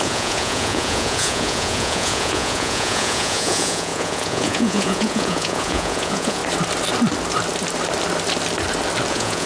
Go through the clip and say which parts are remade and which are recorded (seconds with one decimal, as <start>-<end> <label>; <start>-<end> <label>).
0.0-6.4 remade; 6.4-9.1 recorded; 9.1-9.5 remade